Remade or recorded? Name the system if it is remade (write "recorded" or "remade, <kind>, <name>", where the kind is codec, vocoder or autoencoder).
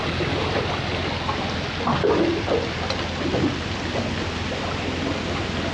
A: recorded